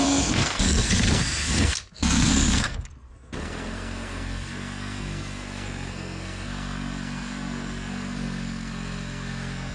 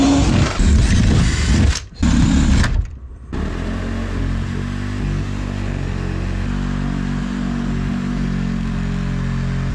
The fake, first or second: first